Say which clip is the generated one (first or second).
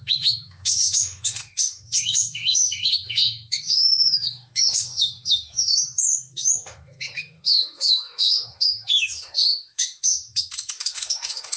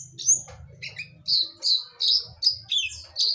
first